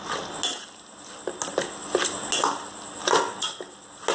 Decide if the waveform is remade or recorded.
recorded